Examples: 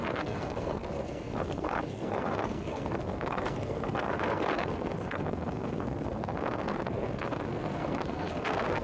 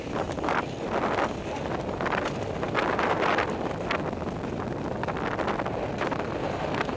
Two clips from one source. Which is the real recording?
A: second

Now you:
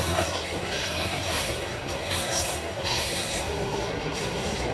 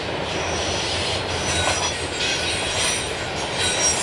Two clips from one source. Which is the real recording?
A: second